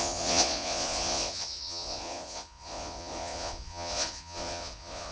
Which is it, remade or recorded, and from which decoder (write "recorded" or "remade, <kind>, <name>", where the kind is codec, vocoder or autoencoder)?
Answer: remade, vocoder, Vocos